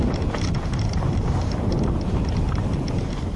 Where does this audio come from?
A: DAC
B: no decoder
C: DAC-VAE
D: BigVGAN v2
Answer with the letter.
D